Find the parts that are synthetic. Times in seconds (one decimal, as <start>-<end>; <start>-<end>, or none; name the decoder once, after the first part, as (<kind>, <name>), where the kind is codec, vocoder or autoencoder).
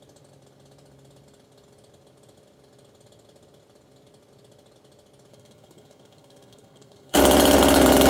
5.3-7.2 (codec, SNAC)